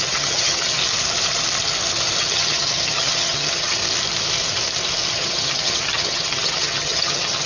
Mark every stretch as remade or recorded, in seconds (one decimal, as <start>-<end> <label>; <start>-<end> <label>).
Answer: 0.0-0.8 remade; 0.8-2.2 recorded; 2.2-3.8 remade; 3.8-5.1 recorded; 5.1-7.5 remade